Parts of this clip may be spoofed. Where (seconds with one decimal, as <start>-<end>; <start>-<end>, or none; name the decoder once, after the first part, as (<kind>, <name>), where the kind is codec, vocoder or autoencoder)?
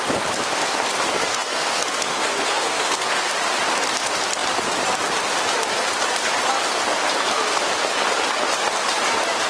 1.3-3.3 (codec, SNAC)